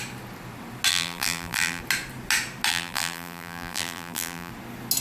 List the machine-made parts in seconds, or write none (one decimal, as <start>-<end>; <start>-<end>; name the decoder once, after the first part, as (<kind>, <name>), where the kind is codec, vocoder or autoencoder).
0.9-1.8 (vocoder, BigVGAN v2); 2.7-4.5

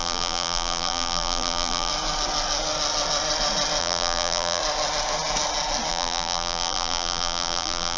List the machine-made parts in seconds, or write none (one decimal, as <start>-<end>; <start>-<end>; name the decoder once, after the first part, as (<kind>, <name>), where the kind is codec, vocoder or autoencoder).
0.0-1.9 (vocoder, BigVGAN v2); 3.8-4.6; 5.9-8.0

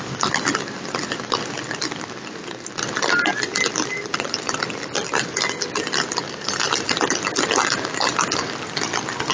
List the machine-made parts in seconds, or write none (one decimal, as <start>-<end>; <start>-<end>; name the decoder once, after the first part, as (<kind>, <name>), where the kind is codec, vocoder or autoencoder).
3.3-4.6 (vocoder, BigVGAN v2)

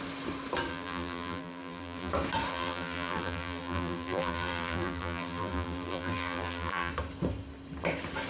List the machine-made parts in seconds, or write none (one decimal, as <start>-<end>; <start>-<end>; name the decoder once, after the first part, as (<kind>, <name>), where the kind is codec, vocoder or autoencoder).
0.7-2.1 (vocoder, BigVGAN v2); 2.5-6.9

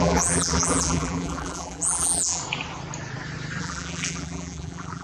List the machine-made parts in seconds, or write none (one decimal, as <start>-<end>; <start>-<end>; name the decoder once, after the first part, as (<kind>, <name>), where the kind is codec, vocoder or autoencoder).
0.0-2.4 (vocoder, BigVGAN v2); 3.6-5.0

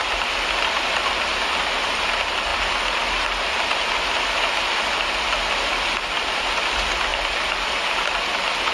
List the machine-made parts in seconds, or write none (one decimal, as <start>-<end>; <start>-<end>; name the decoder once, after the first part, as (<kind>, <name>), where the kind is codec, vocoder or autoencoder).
7.1-8.1 (vocoder, BigVGAN v2)

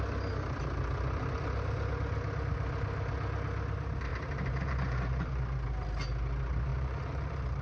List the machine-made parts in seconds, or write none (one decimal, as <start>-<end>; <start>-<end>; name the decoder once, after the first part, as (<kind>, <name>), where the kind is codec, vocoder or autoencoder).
4.1-5.3 (vocoder, BigVGAN v2); 6.7-7.6